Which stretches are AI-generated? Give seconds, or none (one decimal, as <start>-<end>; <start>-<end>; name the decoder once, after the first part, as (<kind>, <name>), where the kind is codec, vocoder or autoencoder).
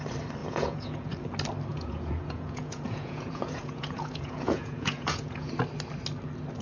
0.4-1.1 (vocoder, Vocos); 1.7-5.5